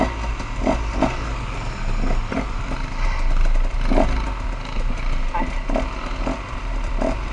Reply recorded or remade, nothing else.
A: recorded